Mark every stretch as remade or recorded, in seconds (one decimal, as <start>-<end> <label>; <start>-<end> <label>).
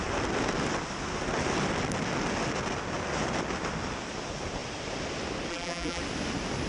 0.0-5.5 recorded; 5.5-6.0 remade; 6.0-6.7 recorded